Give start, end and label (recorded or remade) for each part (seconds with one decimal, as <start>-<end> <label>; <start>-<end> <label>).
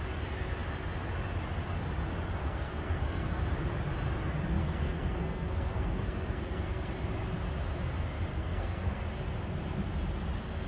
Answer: 0.0-2.4 recorded; 2.4-3.4 remade; 3.4-4.6 recorded; 4.6-6.9 remade; 6.9-8.3 recorded; 8.3-9.0 remade; 9.0-10.7 recorded